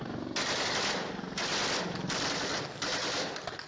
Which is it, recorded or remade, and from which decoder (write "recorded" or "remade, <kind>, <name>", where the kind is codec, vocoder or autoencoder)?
recorded